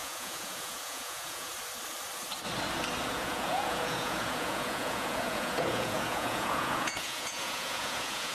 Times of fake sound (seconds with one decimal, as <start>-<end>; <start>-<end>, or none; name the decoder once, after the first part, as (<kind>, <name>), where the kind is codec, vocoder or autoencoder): 0.0-1.5 (vocoder, Vocos); 3.1-8.3